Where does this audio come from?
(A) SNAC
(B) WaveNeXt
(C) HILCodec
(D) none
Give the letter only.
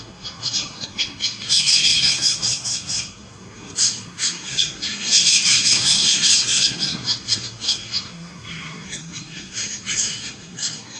A